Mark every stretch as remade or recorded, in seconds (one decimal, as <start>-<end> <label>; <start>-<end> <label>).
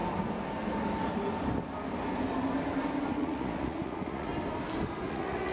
0.0-3.1 recorded; 3.1-4.3 remade; 4.3-5.0 recorded; 5.0-5.5 remade